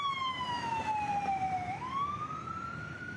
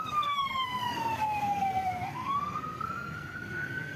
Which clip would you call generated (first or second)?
second